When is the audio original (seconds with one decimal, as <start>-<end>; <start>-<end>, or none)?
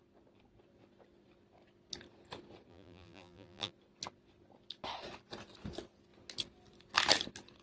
0.0-2.7; 3.7-7.6